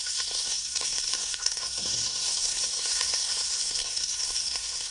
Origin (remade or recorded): remade